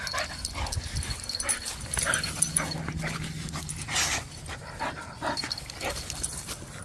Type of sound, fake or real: real